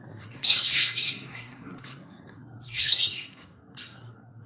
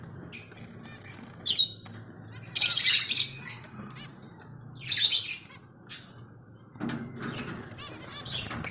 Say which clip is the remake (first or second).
first